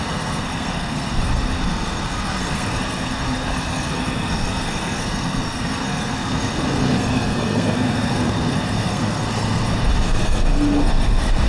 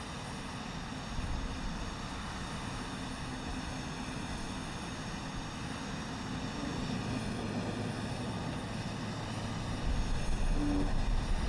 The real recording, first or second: second